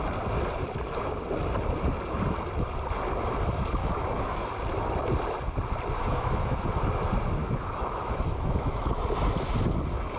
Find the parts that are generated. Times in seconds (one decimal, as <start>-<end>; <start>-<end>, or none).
3.8-4.4; 6.0-6.6; 7.4-8.9